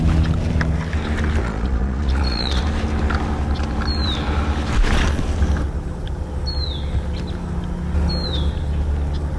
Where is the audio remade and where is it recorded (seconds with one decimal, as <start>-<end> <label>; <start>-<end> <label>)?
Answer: 0.0-1.4 recorded; 1.4-2.6 remade; 2.6-9.4 recorded